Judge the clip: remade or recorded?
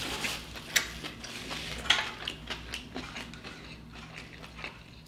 recorded